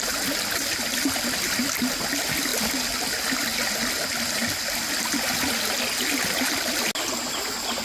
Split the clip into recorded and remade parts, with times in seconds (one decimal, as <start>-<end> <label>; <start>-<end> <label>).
0.0-7.8 recorded